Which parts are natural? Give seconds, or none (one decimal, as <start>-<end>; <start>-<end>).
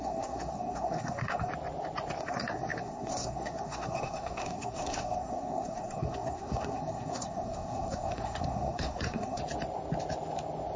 1.5-2.2; 9.4-10.8